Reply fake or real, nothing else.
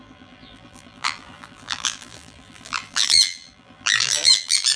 fake